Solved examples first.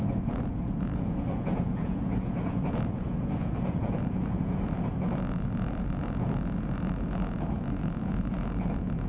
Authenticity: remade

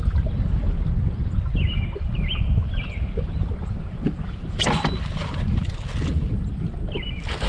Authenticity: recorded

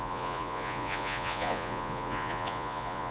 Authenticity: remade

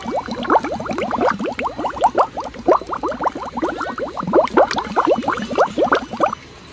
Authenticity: recorded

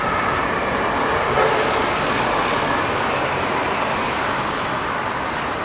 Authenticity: recorded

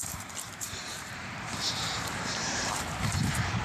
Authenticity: remade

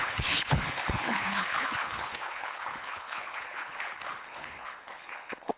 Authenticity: remade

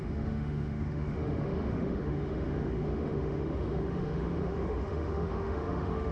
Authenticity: remade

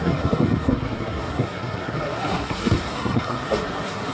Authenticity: remade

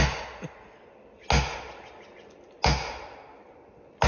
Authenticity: recorded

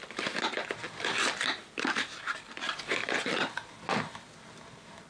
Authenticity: recorded